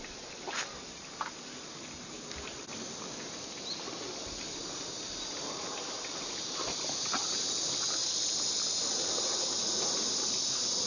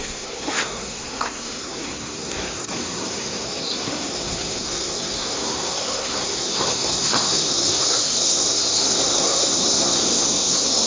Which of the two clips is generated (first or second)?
second